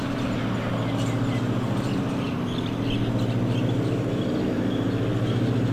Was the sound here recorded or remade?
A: recorded